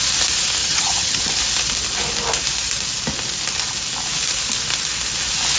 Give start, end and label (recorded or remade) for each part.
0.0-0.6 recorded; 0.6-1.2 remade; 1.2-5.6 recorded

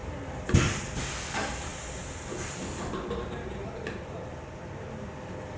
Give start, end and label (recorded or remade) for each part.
0.0-5.6 recorded

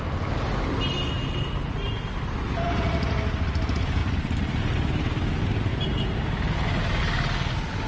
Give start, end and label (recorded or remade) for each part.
0.0-7.9 recorded

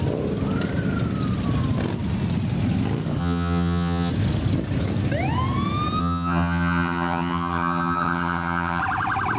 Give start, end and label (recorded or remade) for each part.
0.0-3.2 recorded; 3.2-4.1 remade; 4.1-6.0 recorded; 6.0-8.8 remade; 8.8-9.4 recorded